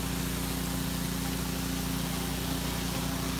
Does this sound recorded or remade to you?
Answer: recorded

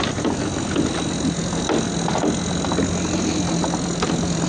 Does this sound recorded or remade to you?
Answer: recorded